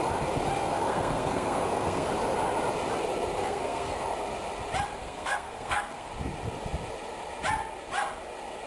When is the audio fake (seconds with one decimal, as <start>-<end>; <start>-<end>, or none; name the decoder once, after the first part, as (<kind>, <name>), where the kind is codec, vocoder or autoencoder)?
0.7-2.1 (codec, SNAC); 3.4-4.0; 5.0-6.1